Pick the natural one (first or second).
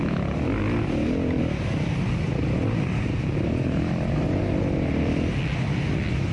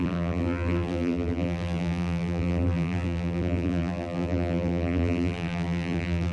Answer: first